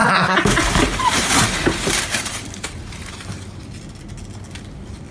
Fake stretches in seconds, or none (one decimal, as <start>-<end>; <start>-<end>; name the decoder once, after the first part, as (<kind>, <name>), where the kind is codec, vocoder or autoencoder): 0.0-3.1 (vocoder, BigVGAN v2)